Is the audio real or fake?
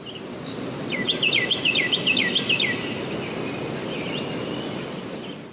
real